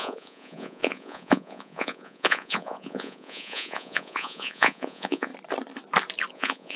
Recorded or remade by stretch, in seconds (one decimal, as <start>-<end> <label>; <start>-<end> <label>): 0.0-5.3 remade; 5.3-6.3 recorded; 6.3-6.8 remade